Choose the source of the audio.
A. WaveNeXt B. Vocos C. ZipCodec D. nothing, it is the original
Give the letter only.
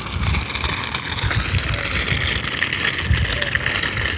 D